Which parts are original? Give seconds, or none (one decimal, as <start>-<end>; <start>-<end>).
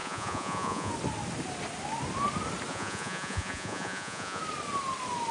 0.9-2.7; 4.4-5.3